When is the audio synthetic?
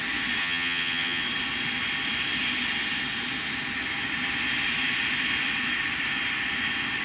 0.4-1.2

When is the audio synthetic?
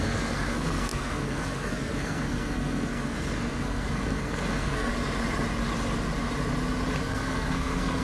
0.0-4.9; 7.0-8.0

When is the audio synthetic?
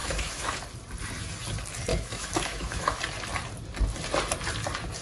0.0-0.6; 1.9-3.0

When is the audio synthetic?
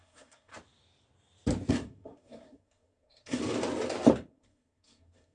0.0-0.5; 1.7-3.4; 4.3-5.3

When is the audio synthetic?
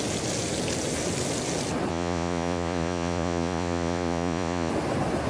1.9-4.7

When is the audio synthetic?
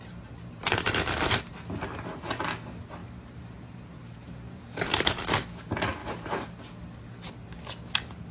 0.6-1.5; 3.0-5.2; 6.0-6.6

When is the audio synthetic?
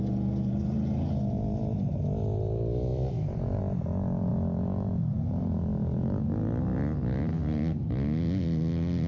2.9-3.6